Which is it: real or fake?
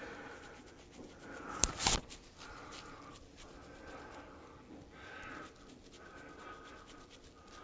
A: real